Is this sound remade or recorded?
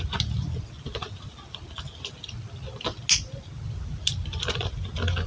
recorded